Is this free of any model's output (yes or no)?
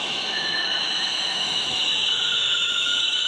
no